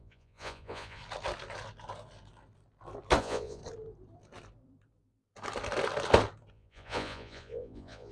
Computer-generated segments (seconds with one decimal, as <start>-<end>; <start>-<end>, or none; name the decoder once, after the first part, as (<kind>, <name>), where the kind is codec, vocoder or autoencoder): 0.0-1.0 (vocoder, Vocos); 3.2-3.6; 6.5-8.1